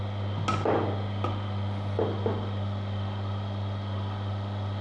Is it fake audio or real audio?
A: real